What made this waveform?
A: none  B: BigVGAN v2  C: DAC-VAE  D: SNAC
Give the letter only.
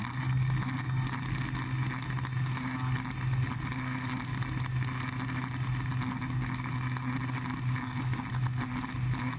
A